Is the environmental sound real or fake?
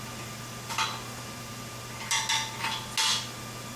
real